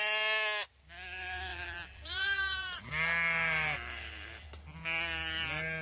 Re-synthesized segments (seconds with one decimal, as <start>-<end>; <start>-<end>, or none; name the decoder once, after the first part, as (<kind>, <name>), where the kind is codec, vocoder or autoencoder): 1.5-2.9 (vocoder, BigVGAN v2)